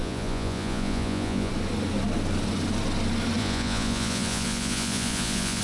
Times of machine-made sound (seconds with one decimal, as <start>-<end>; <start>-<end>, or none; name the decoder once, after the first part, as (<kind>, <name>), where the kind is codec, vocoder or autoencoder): 0.0-1.5 (vocoder, Vocos); 3.4-5.6